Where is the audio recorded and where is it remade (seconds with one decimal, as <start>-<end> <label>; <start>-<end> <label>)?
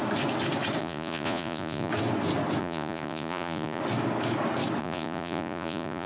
0.0-0.8 recorded; 0.8-1.9 remade; 1.9-2.6 recorded; 2.6-3.8 remade; 3.8-4.8 recorded; 4.8-6.1 remade